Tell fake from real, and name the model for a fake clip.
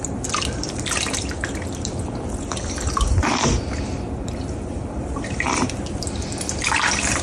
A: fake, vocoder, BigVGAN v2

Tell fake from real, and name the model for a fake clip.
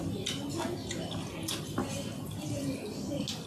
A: real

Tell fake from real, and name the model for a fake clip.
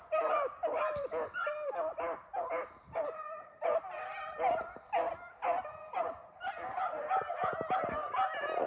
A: real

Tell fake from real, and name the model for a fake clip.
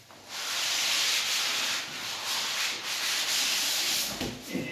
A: real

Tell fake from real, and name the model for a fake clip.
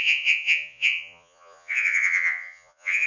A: fake, vocoder, Vocos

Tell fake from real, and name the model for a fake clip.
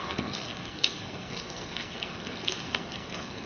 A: fake, codec, SNAC